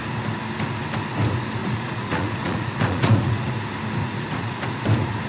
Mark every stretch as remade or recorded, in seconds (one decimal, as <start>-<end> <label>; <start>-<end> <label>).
0.0-1.6 recorded; 1.6-3.3 remade; 3.3-4.0 recorded; 4.0-4.6 remade; 4.6-5.3 recorded